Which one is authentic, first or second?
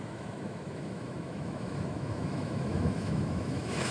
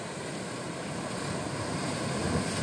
second